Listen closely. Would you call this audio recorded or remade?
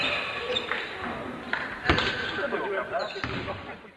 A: remade